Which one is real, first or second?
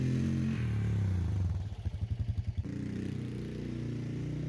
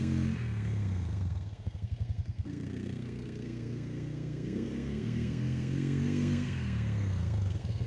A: first